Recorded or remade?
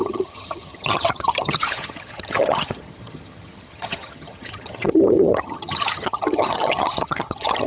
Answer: remade